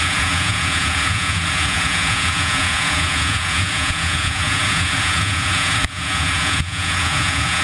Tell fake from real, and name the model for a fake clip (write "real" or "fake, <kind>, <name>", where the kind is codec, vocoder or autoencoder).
fake, vocoder, Vocos